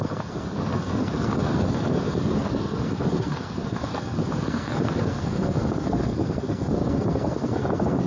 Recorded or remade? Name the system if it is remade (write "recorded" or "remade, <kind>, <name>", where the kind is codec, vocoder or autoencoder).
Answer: remade, codec, SNAC